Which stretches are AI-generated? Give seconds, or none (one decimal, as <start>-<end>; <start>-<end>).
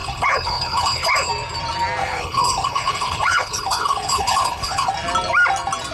0.0-1.3; 2.0-4.9